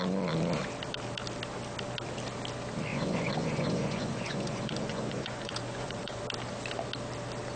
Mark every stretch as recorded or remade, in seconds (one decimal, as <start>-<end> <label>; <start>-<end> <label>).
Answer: 0.0-2.9 recorded; 2.9-6.2 remade; 6.2-7.6 recorded